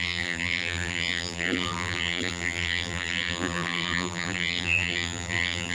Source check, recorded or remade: remade